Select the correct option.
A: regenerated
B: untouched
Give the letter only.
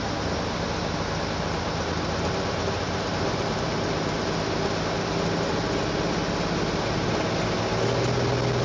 B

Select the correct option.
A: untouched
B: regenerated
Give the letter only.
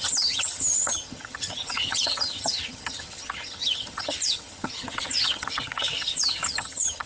B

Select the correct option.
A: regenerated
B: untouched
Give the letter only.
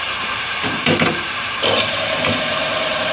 A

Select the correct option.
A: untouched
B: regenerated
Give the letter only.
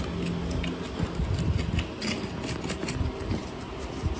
A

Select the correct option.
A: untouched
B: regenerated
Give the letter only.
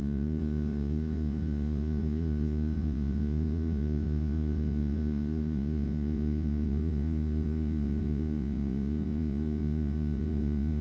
B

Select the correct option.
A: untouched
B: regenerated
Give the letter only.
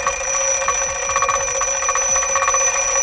A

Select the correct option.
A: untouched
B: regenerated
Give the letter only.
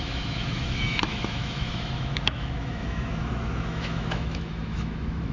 B